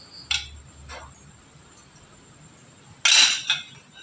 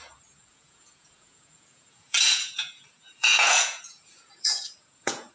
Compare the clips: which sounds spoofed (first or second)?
second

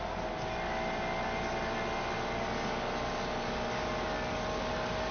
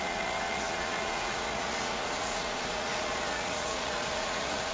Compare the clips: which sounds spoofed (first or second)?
second